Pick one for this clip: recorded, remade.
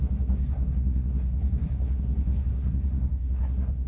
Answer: remade